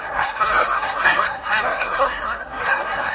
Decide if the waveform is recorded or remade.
remade